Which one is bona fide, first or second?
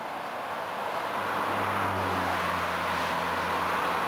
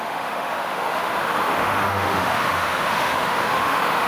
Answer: first